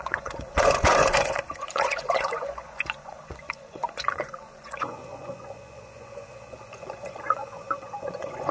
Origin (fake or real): fake